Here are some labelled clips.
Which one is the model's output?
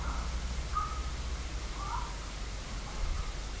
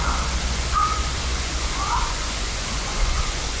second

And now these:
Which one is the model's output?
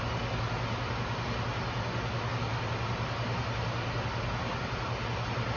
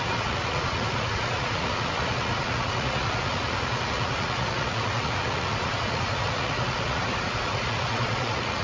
second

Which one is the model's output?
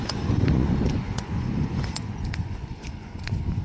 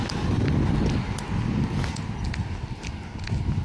first